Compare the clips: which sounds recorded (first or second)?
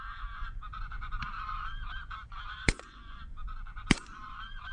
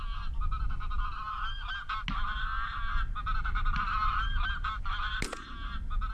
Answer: second